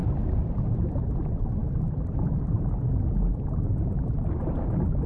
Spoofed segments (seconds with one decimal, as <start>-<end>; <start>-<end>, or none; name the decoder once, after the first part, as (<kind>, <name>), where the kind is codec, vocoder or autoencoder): none